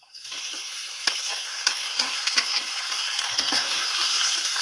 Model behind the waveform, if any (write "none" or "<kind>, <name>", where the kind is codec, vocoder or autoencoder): codec, SNAC